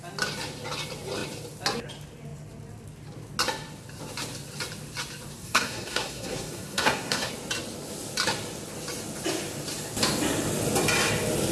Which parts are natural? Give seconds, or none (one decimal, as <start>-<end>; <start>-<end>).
0.0-5.4; 7.3-11.5